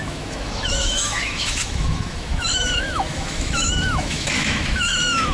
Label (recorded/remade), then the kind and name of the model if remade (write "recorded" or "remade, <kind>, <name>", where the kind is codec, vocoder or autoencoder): remade, autoencoder, DAC-VAE